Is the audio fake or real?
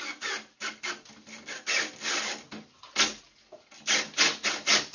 fake